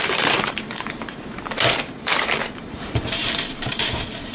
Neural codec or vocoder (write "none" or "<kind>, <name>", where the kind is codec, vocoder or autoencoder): vocoder, BigVGAN v2